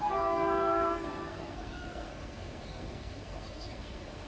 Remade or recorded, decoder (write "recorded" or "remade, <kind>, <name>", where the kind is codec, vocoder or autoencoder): remade, codec, SNAC